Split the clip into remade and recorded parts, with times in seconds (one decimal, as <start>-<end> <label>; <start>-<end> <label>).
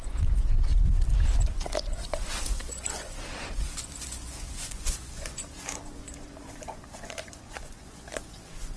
0.0-0.7 remade; 0.7-1.4 recorded; 1.4-8.8 remade